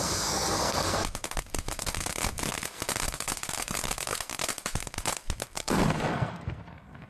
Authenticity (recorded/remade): remade